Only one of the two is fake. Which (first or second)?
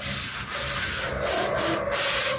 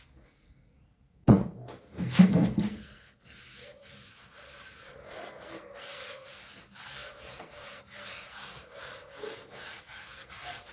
second